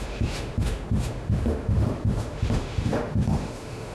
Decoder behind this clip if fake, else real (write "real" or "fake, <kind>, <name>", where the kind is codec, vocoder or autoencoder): fake, autoencoder, DAC-VAE